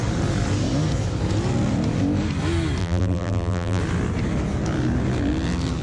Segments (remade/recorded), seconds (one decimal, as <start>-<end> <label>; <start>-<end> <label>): 0.0-2.8 recorded; 2.8-3.8 remade; 3.8-5.8 recorded